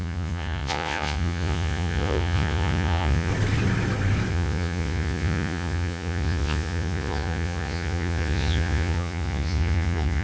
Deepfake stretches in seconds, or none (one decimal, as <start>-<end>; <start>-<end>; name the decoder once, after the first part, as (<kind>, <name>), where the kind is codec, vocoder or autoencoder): 0.0-3.3 (vocoder, Vocos); 4.3-10.2